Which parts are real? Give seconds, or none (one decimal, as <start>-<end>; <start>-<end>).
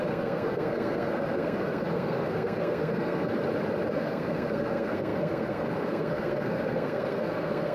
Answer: 3.3-3.9